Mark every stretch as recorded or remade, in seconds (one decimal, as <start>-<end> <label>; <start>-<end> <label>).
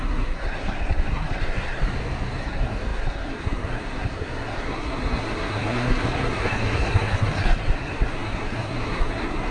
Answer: 0.0-1.8 remade; 1.8-2.4 recorded; 2.4-9.5 remade